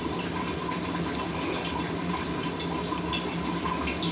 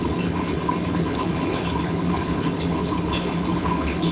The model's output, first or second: second